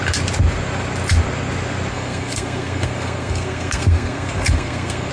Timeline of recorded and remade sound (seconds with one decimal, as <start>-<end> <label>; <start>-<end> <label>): 0.0-1.9 recorded; 1.9-5.1 remade